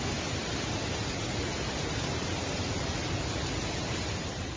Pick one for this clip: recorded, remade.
recorded